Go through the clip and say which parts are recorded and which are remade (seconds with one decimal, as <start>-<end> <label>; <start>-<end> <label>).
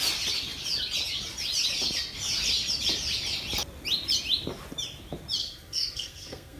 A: 0.0-5.4 recorded; 5.4-6.6 remade